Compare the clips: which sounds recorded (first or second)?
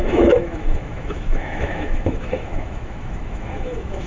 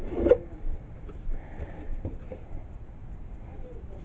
second